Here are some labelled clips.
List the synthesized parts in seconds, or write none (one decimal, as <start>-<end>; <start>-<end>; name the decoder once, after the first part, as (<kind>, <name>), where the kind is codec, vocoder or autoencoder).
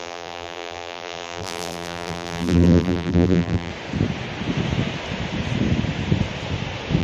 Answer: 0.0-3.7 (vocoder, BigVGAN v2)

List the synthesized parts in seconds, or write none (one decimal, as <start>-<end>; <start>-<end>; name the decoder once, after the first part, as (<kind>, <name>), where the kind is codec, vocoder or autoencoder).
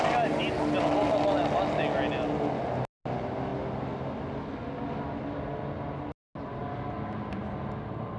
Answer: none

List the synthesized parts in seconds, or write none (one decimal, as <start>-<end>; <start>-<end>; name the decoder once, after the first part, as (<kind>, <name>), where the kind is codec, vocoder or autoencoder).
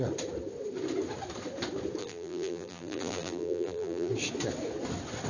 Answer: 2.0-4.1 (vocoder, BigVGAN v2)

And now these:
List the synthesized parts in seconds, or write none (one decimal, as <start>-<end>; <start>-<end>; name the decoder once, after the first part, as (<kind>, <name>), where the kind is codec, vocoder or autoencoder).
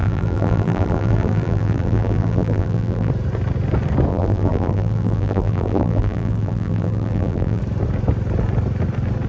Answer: 0.0-3.1 (vocoder, BigVGAN v2); 4.1-7.6